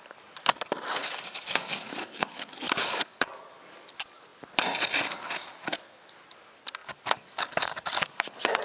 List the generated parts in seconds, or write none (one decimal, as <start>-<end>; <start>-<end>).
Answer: 1.0-3.3; 6.8-8.6

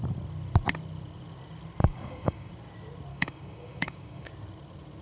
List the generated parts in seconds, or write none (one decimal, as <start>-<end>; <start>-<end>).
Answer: 1.8-2.5; 3.1-4.3

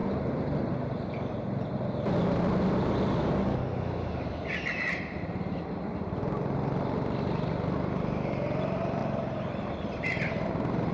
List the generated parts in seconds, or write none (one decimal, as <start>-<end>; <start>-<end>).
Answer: 3.5-4.1

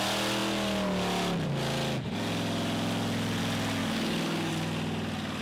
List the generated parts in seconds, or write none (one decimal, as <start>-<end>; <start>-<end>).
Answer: 3.8-4.5